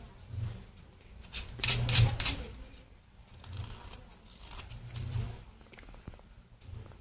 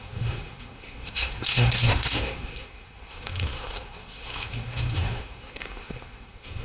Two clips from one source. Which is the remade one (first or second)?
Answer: second